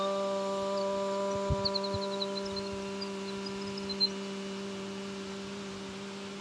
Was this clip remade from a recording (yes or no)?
no